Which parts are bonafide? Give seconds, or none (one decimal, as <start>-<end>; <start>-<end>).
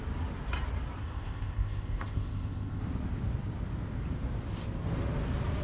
0.0-1.0; 2.8-5.6